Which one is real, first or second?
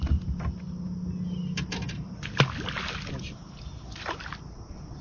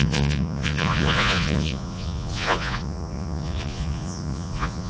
first